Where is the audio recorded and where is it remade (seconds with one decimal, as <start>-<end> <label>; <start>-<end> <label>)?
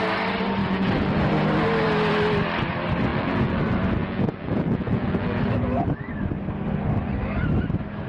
0.0-0.6 recorded; 0.6-1.3 remade; 1.3-3.1 recorded; 3.1-3.6 remade; 3.6-4.0 recorded; 4.0-5.4 remade; 5.4-8.1 recorded